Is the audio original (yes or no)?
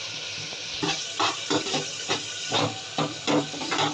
no